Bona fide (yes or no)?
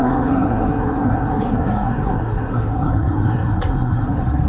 no